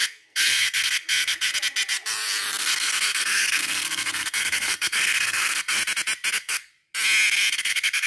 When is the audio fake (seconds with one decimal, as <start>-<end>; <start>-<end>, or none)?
0.0-1.5; 2.6-5.8; 6.3-6.7; 7.5-8.1